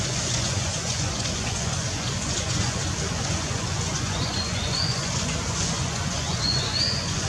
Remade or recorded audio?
remade